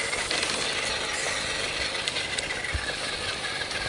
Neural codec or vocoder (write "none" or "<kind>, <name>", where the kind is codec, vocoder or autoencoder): none